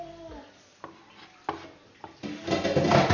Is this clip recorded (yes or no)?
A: yes